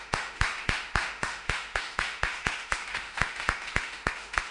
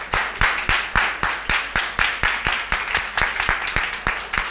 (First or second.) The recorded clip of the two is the second